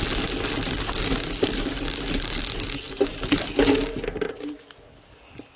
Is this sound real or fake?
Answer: real